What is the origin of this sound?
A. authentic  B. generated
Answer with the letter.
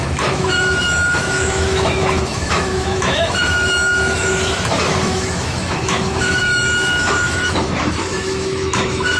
B